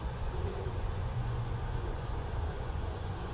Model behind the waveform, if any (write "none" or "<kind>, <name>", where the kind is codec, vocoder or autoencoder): vocoder, Vocos